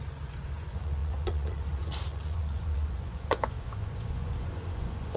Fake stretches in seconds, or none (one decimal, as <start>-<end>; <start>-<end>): 0.0-5.2